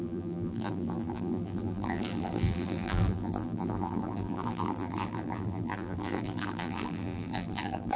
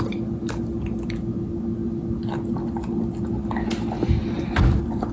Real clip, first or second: second